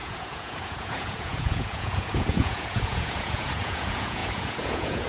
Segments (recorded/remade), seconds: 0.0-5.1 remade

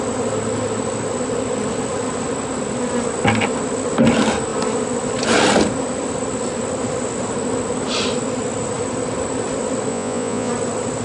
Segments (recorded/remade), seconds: 0.0-9.9 recorded; 9.9-10.5 remade; 10.5-11.0 recorded

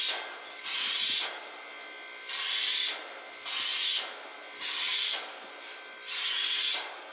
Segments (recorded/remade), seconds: 0.0-7.1 recorded

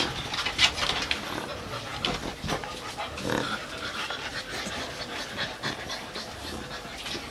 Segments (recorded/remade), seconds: 0.0-7.3 recorded